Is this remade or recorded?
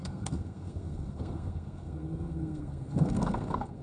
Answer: remade